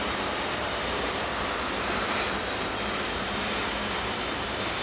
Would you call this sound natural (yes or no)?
no